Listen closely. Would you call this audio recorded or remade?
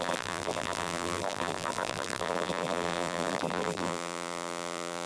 remade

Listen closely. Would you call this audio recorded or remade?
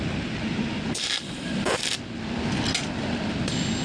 remade